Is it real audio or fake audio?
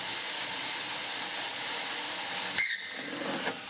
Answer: real